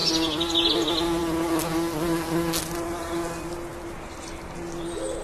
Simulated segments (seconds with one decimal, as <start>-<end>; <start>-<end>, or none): none